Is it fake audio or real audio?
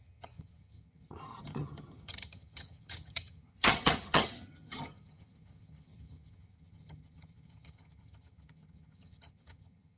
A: fake